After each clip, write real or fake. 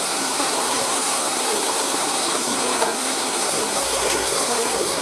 fake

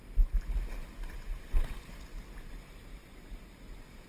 real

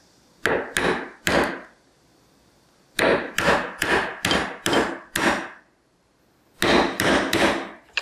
real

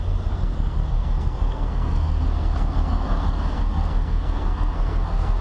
fake